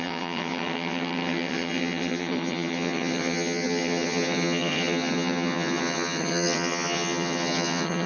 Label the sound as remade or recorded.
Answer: remade